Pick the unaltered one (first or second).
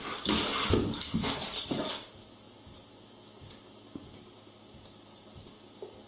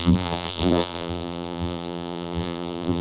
first